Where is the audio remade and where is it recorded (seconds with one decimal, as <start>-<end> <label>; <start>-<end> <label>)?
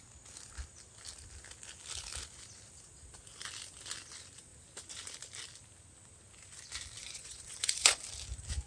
0.0-7.0 recorded; 7.0-8.0 remade; 8.0-8.7 recorded